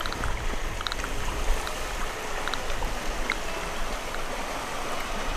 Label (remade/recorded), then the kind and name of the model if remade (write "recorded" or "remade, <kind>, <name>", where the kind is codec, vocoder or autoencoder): recorded